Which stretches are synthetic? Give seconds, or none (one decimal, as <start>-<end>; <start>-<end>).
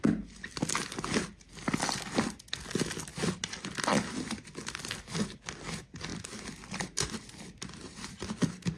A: none